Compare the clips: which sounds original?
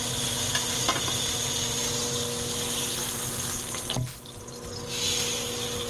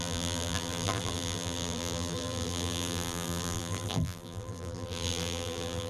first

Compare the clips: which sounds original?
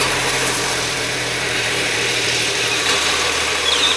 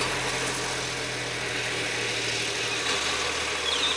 second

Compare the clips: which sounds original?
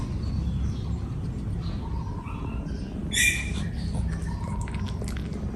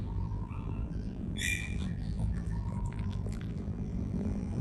first